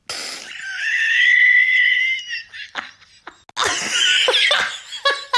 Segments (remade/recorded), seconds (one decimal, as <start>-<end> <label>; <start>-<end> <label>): 0.0-0.8 recorded; 0.8-2.0 remade; 2.0-5.4 recorded